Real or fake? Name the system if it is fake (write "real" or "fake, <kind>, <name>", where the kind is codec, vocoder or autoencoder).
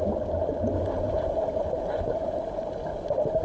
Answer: real